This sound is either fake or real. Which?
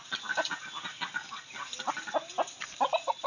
real